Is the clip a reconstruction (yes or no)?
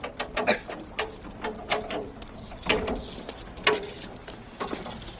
no